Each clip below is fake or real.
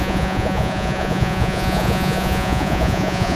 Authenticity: fake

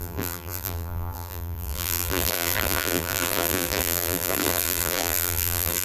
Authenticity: fake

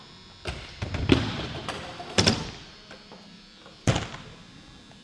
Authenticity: fake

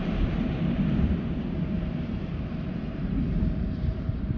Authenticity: fake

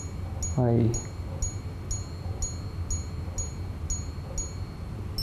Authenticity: real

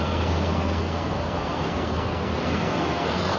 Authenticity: fake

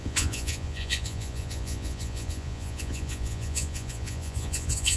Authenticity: fake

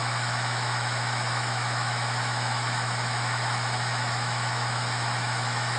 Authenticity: fake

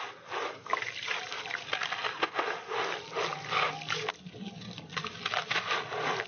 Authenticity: real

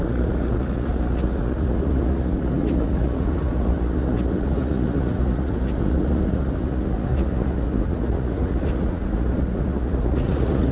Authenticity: fake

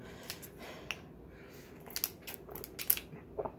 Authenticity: real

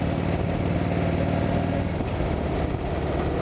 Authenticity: real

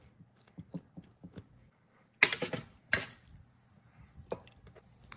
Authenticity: real